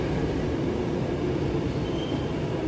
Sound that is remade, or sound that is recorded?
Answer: recorded